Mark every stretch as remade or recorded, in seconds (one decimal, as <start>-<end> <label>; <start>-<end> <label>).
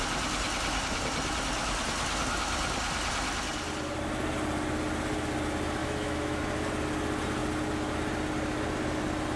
0.0-5.8 recorded; 5.8-6.4 remade; 6.4-9.4 recorded